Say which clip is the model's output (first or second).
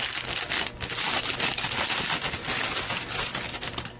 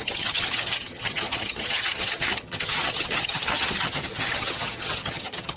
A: second